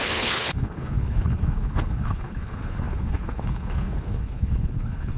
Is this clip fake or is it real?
fake